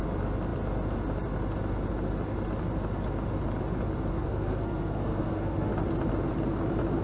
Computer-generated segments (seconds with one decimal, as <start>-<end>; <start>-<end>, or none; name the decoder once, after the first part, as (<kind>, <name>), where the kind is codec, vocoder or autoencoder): 4.1-5.7 (codec, SNAC)